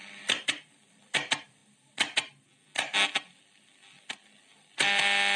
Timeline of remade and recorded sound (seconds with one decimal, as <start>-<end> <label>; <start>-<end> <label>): 0.0-0.7 remade; 0.7-5.4 recorded